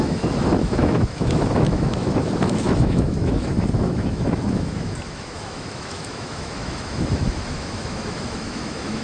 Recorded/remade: remade